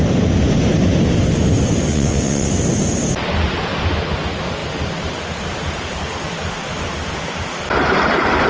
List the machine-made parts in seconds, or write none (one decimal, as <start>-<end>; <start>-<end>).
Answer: 1.9-2.5